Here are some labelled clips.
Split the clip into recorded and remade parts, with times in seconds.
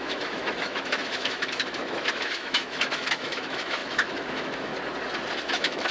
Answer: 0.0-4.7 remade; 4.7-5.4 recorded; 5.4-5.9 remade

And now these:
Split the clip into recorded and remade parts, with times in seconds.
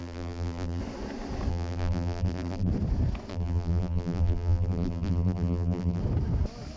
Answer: 0.0-0.8 remade; 0.8-1.5 recorded; 1.5-2.7 remade; 2.7-3.3 recorded; 3.3-6.0 remade; 6.0-6.8 recorded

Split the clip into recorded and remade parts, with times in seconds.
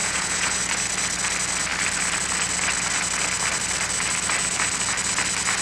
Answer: 0.0-0.6 remade; 0.6-5.6 recorded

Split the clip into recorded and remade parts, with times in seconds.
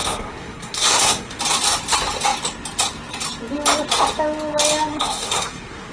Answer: 0.0-1.4 remade; 1.4-4.9 recorded; 4.9-5.9 remade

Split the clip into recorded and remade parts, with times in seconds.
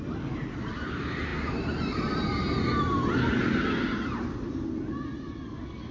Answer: 0.0-5.9 recorded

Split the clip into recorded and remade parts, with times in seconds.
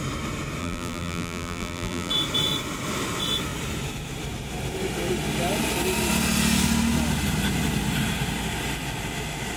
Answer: 0.0-0.6 recorded; 0.6-2.1 remade; 2.1-9.6 recorded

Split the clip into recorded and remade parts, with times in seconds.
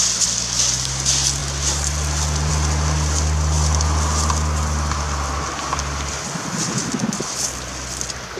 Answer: 0.0-8.4 recorded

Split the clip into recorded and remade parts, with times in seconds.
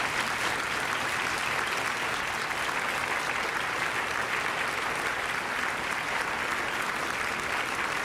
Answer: 0.0-3.0 recorded; 3.0-6.2 remade; 6.2-8.0 recorded